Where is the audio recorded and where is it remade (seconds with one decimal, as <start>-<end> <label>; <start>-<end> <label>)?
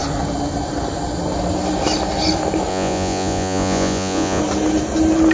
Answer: 0.0-2.7 recorded; 2.7-4.4 remade; 4.4-5.3 recorded